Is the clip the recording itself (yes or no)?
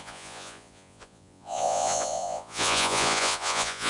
no